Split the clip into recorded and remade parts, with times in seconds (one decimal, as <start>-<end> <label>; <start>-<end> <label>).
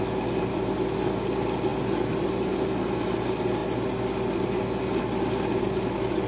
0.0-6.3 recorded